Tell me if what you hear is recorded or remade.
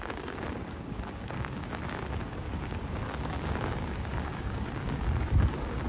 remade